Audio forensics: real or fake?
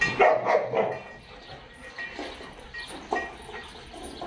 real